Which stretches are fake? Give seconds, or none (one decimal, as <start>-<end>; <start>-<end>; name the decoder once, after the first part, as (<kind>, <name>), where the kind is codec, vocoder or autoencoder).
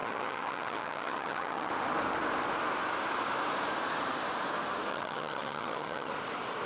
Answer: 0.0-1.7 (vocoder, HiFi-GAN); 4.9-6.1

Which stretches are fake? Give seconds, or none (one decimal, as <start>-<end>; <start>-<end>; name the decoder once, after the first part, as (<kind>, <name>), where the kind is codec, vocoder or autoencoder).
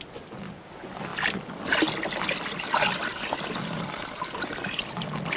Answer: none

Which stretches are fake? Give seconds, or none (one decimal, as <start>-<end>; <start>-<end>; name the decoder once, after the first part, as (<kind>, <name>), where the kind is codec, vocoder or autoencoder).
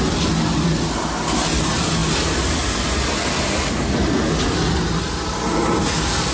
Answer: none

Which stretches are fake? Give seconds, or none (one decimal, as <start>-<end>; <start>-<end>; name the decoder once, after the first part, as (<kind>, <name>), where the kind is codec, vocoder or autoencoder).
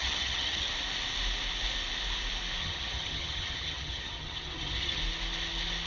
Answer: 0.0-0.7 (vocoder, HiFi-GAN); 2.6-5.0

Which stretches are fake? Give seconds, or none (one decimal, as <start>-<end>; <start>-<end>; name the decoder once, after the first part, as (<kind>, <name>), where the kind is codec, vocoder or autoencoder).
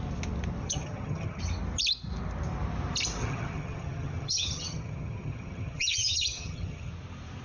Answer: 0.6-1.4 (vocoder, HiFi-GAN); 3.2-6.9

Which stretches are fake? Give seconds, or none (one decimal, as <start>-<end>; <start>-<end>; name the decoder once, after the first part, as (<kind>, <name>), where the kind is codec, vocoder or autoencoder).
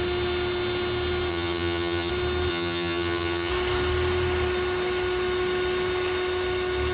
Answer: 1.3-2.1 (vocoder, HiFi-GAN); 2.5-3.5